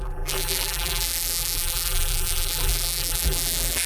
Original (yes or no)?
no